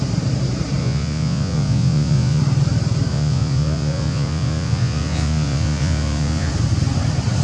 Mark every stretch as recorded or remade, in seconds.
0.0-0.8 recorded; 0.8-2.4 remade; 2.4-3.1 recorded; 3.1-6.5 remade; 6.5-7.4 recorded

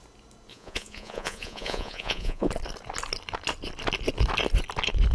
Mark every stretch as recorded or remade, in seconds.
0.0-0.5 recorded; 0.5-2.5 remade; 2.5-5.1 recorded

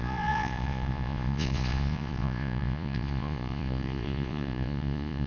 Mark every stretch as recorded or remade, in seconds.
0.0-5.3 remade

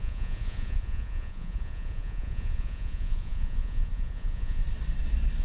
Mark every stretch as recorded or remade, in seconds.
0.0-4.6 remade; 4.6-5.4 recorded

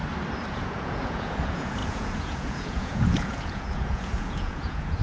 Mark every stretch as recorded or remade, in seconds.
0.0-0.5 recorded; 0.5-5.0 remade

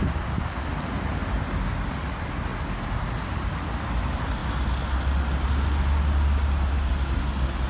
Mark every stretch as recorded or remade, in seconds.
0.0-7.7 recorded

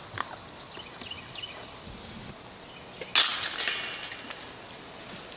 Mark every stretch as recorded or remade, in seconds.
0.0-5.4 recorded

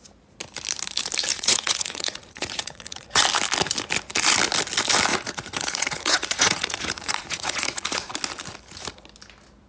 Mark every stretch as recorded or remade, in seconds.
0.0-1.3 recorded; 1.3-3.2 remade; 3.2-5.1 recorded; 5.1-8.1 remade; 8.1-9.7 recorded